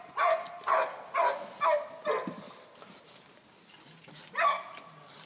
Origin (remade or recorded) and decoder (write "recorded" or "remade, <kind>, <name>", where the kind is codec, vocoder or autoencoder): recorded